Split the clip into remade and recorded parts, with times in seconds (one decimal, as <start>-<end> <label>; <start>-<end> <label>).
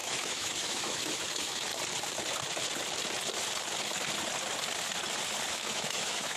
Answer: 0.0-1.7 remade; 1.7-5.5 recorded; 5.5-6.4 remade